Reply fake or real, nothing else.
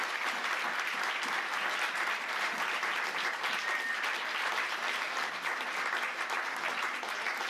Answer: real